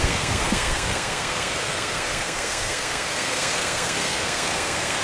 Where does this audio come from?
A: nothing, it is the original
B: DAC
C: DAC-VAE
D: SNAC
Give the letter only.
D